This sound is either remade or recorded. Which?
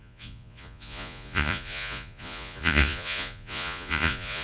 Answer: remade